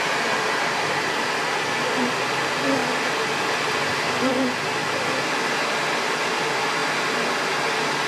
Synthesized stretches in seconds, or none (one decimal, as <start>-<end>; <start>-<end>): none